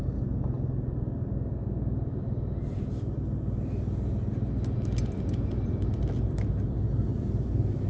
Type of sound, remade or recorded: recorded